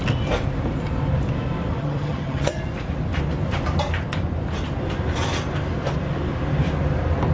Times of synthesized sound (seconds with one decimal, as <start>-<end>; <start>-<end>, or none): 1.8-2.6